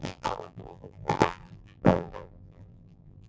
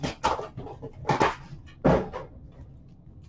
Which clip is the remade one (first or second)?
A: first